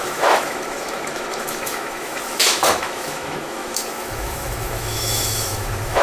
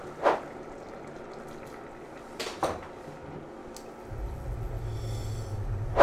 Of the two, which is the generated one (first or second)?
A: first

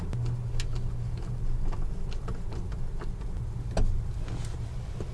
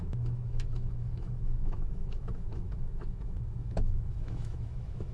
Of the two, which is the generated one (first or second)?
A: second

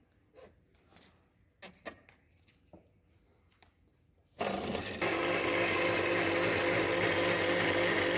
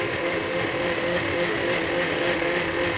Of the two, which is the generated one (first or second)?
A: second